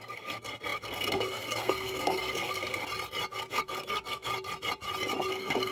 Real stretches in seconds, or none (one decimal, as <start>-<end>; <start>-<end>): 2.8-3.4; 4.3-5.3